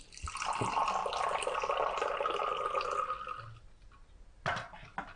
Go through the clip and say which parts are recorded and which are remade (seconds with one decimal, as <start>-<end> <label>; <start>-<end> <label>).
0.0-5.2 recorded

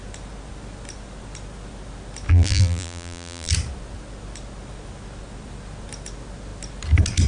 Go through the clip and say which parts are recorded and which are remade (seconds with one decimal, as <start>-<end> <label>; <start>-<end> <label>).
0.0-2.3 recorded; 2.3-3.5 remade; 3.5-7.3 recorded

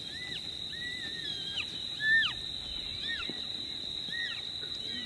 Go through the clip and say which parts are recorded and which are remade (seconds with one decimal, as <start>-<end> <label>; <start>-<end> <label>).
0.0-5.1 recorded

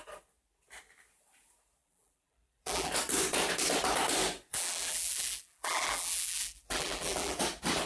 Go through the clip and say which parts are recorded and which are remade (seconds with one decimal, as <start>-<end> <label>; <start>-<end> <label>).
0.0-1.8 recorded; 1.8-2.9 remade; 2.9-4.5 recorded; 4.5-7.4 remade; 7.4-7.9 recorded

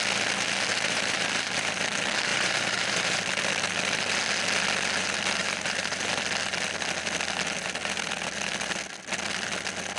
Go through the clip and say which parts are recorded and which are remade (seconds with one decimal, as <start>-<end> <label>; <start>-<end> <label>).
0.0-0.7 recorded; 0.7-1.7 remade; 1.7-2.3 recorded; 2.3-3.2 remade; 3.2-5.4 recorded; 5.4-6.1 remade; 6.1-10.0 recorded